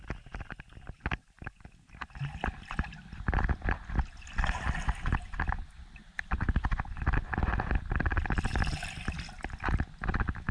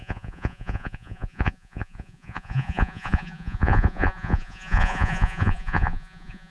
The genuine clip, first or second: first